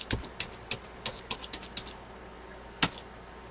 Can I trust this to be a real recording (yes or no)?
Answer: yes